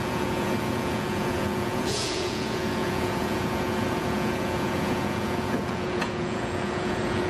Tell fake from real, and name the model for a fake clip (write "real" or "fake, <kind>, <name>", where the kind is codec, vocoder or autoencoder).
fake, vocoder, Vocos